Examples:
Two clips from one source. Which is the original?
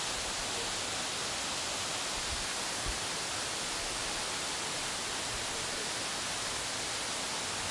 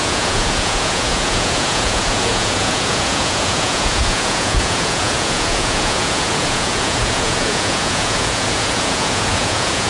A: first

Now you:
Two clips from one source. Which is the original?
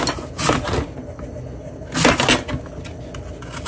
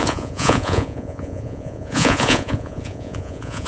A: first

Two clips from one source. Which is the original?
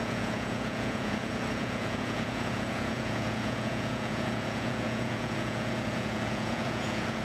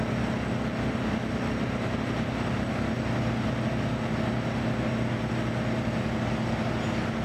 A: second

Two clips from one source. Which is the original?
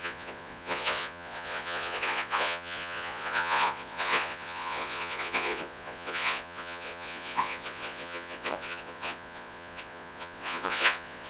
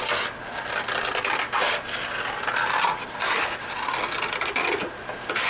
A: second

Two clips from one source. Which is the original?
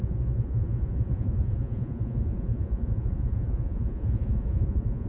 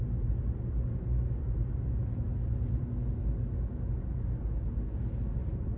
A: second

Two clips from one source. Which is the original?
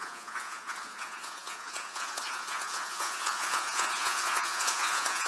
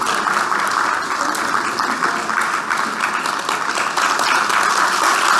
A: second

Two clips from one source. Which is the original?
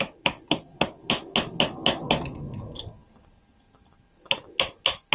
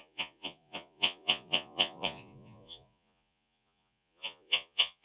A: first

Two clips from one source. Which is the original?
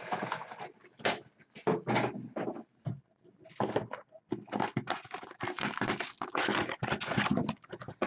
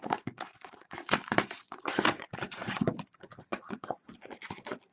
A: first